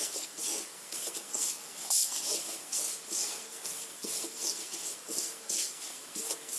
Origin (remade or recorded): remade